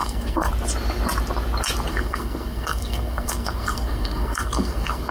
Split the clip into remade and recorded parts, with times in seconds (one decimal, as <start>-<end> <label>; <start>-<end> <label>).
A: 0.0-0.5 remade; 0.5-1.9 recorded; 1.9-5.1 remade